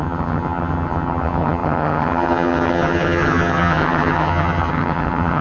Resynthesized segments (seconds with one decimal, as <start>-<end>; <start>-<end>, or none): 0.0-5.4